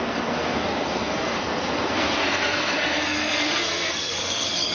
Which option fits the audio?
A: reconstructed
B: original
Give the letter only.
A